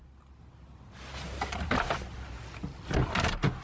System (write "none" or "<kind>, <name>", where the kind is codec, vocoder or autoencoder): none